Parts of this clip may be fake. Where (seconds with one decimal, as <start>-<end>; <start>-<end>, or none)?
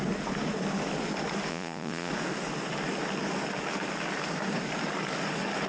1.5-2.1